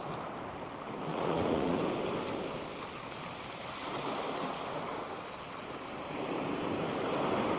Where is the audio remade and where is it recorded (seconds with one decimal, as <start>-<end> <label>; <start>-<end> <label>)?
0.0-1.1 recorded; 1.1-1.8 remade; 1.8-7.6 recorded